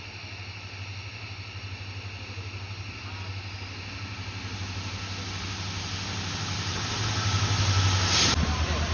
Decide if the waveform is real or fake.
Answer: real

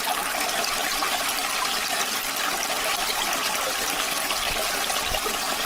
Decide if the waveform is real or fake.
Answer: real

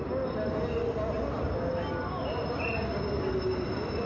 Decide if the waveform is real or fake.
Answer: real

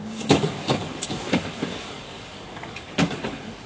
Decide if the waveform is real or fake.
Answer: fake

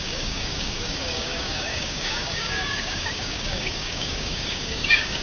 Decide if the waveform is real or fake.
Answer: fake